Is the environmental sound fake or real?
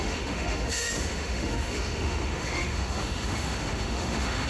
fake